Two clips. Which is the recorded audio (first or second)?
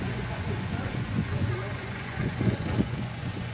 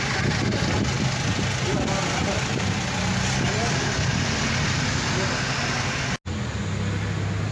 second